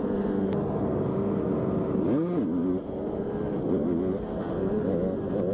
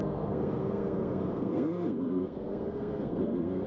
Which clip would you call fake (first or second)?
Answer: second